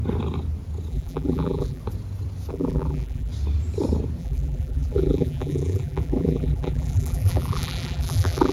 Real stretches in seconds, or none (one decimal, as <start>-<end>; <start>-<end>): 0.0-0.9; 1.8-2.5; 3.3-4.2